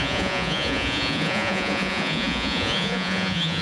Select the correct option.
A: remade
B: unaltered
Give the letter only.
A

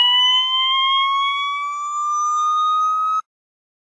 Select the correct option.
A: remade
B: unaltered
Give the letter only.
B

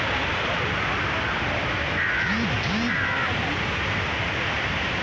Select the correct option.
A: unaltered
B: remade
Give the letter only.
A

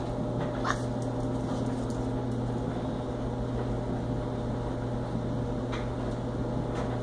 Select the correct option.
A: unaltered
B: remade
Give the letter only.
A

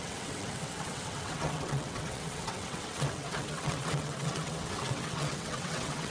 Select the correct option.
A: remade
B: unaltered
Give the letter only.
A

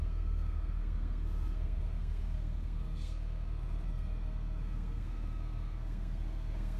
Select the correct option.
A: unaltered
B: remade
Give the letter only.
B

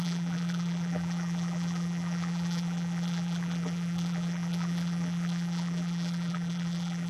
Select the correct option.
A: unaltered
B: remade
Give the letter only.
B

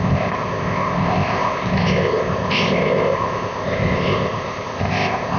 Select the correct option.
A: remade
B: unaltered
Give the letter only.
A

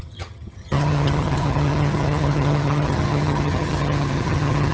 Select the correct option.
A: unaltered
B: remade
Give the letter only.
B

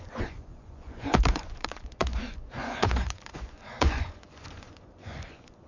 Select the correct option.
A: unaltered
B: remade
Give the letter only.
B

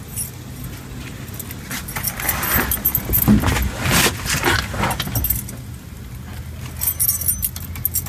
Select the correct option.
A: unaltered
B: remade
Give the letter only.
A